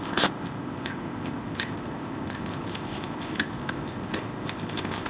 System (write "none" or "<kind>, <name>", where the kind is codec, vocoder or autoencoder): codec, ZipCodec